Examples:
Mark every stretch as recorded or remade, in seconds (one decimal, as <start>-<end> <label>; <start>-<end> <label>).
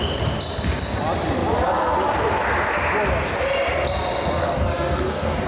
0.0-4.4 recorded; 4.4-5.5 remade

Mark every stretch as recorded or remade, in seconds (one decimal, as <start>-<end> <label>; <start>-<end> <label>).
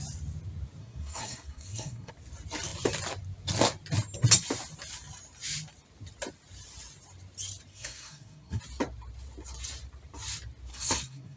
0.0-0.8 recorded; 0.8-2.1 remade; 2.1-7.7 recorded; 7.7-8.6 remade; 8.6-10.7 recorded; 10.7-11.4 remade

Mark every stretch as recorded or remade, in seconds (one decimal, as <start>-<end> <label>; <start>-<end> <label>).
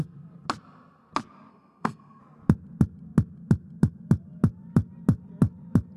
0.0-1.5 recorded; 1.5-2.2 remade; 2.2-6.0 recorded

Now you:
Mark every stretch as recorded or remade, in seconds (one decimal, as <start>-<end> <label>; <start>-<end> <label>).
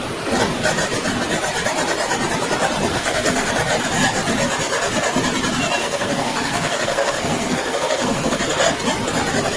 0.0-2.9 recorded; 2.9-3.5 remade; 3.5-5.8 recorded; 5.8-8.4 remade; 8.4-9.6 recorded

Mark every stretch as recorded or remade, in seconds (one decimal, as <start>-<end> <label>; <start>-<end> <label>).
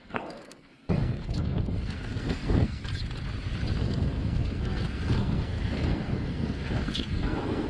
0.0-2.8 remade; 2.8-3.7 recorded; 3.7-7.7 remade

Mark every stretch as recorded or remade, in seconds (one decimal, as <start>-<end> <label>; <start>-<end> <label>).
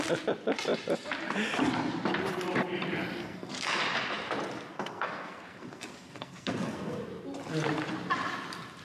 0.0-3.2 recorded; 3.2-3.8 remade; 3.8-4.7 recorded; 4.7-7.0 remade; 7.0-8.8 recorded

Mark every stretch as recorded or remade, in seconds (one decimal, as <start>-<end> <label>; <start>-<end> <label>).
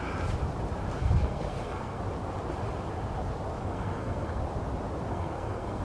0.0-1.0 recorded; 1.0-2.0 remade; 2.0-3.6 recorded; 3.6-4.4 remade; 4.4-5.1 recorded; 5.1-5.8 remade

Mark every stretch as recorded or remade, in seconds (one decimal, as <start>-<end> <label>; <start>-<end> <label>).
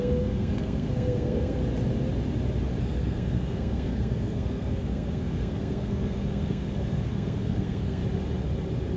0.0-1.6 remade; 1.6-2.8 recorded; 2.8-8.0 remade; 8.0-9.0 recorded